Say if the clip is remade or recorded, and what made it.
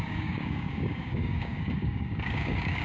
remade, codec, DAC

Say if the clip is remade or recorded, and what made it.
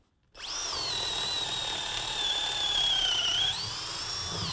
recorded